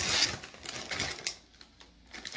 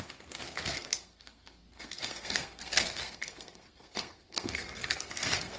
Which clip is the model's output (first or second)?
second